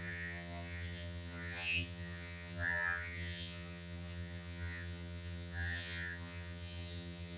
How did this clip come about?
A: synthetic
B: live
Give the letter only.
A